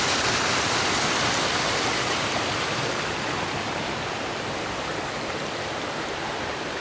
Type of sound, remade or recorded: recorded